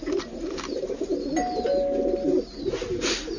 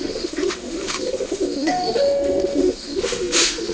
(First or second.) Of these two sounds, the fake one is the second